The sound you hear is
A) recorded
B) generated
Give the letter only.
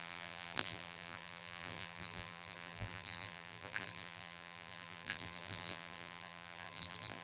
B